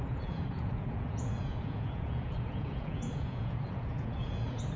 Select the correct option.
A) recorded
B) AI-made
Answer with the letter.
B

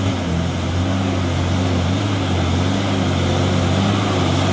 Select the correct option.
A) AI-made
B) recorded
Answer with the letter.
B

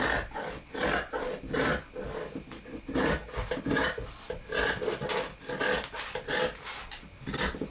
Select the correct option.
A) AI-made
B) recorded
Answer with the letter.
B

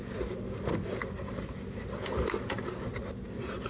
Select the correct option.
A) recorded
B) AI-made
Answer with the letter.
A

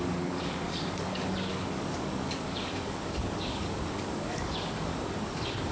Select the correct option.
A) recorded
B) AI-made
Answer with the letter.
B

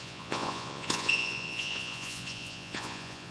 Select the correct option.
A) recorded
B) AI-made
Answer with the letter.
B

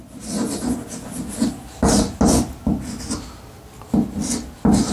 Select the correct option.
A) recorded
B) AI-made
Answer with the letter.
A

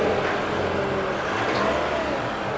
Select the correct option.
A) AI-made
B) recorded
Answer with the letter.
B